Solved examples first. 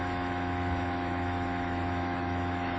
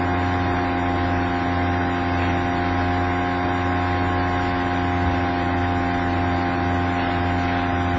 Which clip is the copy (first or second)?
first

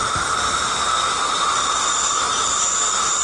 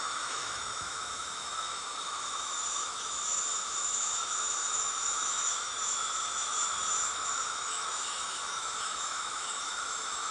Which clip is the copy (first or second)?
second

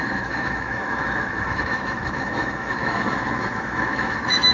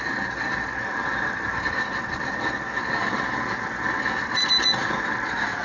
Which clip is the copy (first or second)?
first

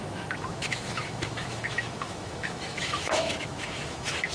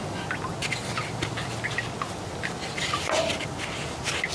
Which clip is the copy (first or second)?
first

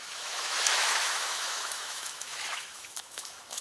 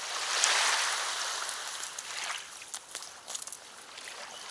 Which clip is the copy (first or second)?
first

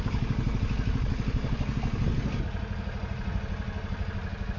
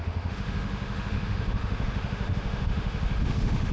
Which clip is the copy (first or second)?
second